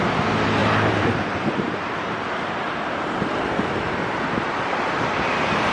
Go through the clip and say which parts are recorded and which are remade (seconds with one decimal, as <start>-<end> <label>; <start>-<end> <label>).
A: 0.0-0.6 recorded; 0.6-4.0 remade; 4.0-5.7 recorded